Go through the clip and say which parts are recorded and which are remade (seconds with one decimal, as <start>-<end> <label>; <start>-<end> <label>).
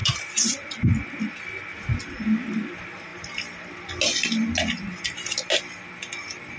0.0-6.6 recorded